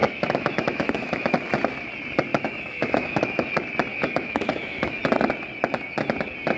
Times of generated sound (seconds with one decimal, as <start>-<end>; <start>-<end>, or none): 0.0-1.3; 2.3-3.5; 3.9-5.0